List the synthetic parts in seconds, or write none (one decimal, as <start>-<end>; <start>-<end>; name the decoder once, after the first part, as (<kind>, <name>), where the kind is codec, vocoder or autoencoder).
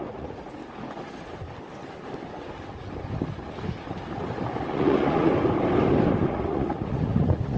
0.0-0.6 (vocoder, Vocos); 4.7-5.3; 6.2-7.6